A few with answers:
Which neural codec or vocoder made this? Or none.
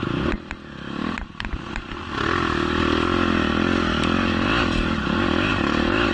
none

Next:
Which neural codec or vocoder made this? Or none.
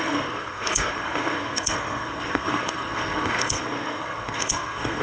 codec, SNAC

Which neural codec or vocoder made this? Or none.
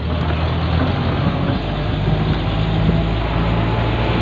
none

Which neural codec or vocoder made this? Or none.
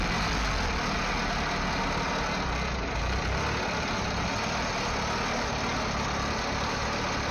none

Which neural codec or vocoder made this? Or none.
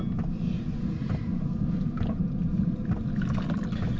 none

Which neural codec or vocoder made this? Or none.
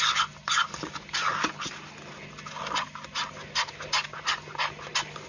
none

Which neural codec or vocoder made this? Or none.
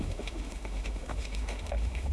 autoencoder, DAC-VAE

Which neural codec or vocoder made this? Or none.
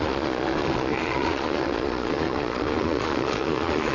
vocoder, Vocos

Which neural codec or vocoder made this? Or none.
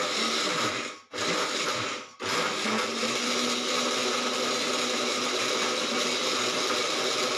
none